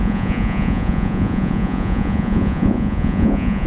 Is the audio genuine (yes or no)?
no